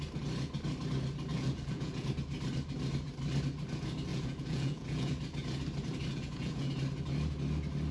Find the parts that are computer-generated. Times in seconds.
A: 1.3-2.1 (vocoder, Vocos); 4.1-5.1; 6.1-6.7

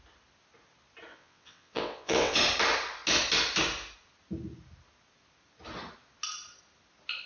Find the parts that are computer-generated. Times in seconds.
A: 1.1-2.4 (vocoder, WaveNeXt)

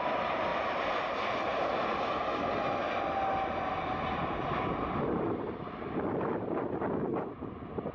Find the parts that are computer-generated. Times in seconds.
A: none